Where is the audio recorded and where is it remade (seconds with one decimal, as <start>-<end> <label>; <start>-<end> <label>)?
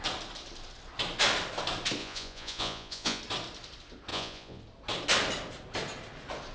0.0-2.0 recorded; 2.0-3.2 remade; 3.2-4.1 recorded; 4.1-4.6 remade; 4.6-6.5 recorded